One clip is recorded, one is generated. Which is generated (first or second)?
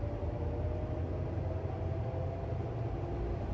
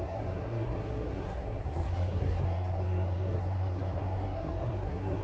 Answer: second